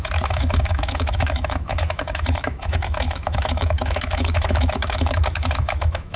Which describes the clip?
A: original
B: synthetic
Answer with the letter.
B